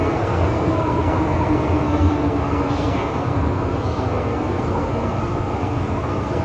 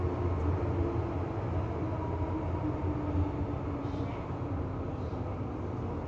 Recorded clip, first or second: second